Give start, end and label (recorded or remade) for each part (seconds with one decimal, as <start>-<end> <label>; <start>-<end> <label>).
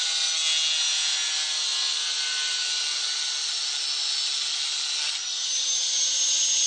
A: 0.0-6.7 recorded